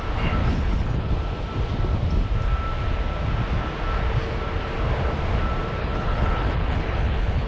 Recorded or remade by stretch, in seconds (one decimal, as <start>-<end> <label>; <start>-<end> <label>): 0.0-0.4 recorded; 0.4-1.1 remade; 1.1-5.8 recorded; 5.8-7.5 remade